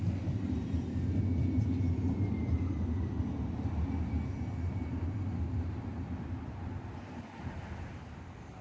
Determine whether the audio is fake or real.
real